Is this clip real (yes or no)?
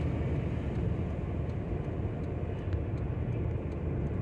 yes